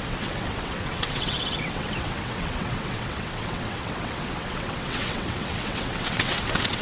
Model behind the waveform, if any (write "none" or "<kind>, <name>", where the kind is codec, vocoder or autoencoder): vocoder, WaveNeXt